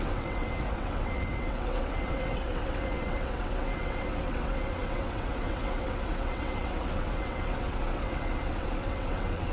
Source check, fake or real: fake